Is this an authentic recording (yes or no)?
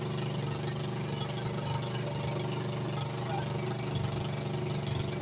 yes